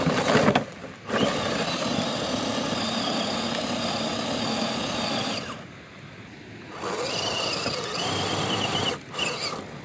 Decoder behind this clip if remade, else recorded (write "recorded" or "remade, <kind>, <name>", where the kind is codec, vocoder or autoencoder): recorded